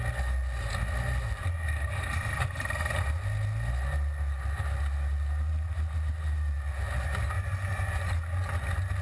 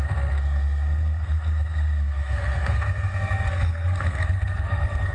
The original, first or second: first